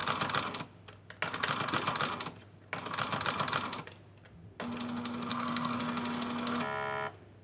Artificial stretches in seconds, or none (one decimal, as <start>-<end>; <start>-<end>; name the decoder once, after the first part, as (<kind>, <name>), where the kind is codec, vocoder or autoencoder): 5.3-5.8 (codec, SNAC)